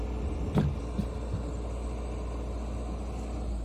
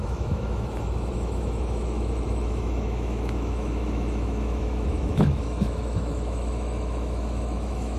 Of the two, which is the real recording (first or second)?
first